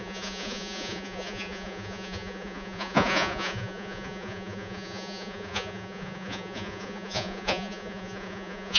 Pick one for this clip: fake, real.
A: fake